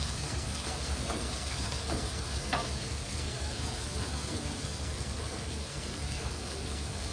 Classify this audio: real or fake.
fake